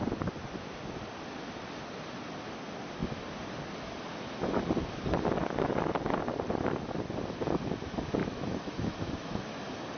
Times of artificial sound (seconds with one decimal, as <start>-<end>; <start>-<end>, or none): 8.2-9.6